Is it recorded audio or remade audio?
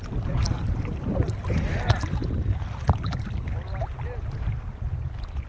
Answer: recorded